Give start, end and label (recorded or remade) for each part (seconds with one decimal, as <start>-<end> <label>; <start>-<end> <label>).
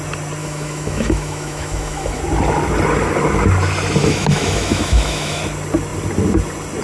0.0-0.4 recorded; 0.4-2.2 remade; 2.2-4.0 recorded; 4.0-5.4 remade; 5.4-6.8 recorded